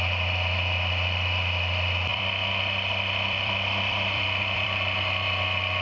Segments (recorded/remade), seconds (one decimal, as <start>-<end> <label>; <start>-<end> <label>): 0.0-2.1 recorded; 2.1-5.8 remade